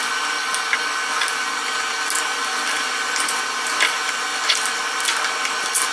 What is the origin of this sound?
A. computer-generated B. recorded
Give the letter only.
B